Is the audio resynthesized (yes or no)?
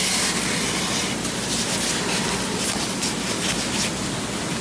no